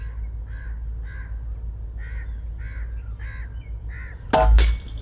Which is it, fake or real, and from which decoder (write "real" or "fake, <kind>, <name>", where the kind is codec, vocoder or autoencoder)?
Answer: real